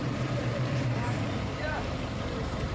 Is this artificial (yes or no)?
yes